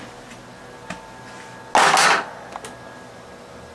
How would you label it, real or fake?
real